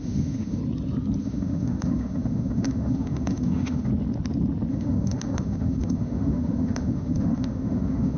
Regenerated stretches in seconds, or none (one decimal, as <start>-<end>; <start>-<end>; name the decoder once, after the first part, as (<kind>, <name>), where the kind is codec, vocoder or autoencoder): 0.0-0.6 (autoencoder, DAC-VAE); 1.2-3.9; 4.7-8.2